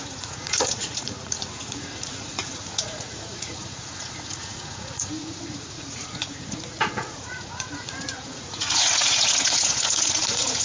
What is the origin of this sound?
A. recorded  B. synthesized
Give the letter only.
B